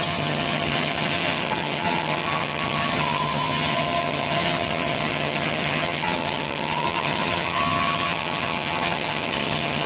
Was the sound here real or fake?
fake